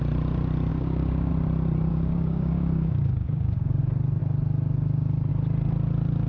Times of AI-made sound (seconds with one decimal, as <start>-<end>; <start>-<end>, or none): 0.7-1.3; 1.9-3.8